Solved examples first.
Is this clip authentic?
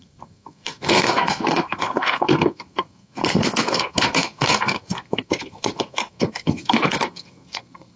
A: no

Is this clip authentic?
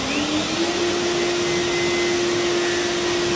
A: yes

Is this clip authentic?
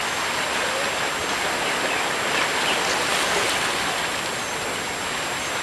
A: yes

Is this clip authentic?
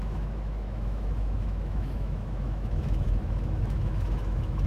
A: no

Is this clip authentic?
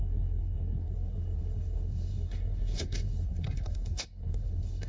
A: no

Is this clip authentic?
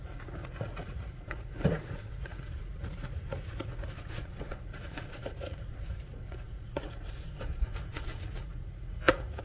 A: no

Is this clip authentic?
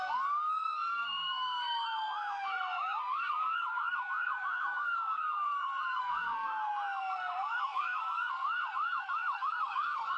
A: no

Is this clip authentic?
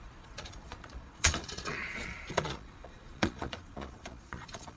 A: no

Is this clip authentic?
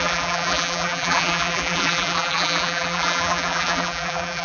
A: no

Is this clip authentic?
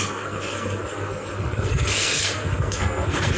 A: no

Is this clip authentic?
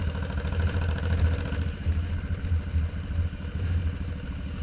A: yes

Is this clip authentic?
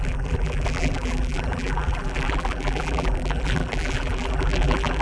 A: no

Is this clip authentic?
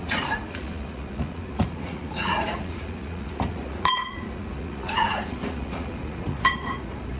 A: no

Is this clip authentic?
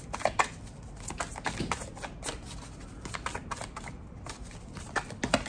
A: yes